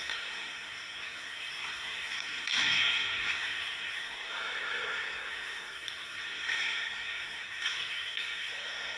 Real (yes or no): no